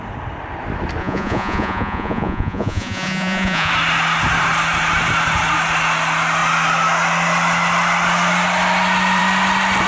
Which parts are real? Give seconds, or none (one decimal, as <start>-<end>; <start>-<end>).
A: 0.0-1.0; 3.7-9.9